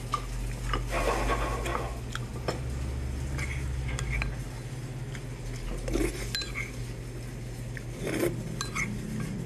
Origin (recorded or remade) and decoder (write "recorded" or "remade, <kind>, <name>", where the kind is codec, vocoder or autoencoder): recorded